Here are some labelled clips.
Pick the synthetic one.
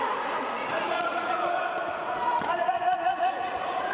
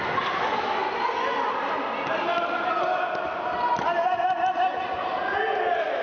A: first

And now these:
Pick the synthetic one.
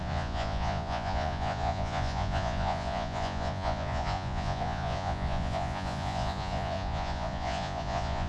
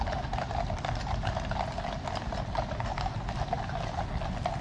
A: first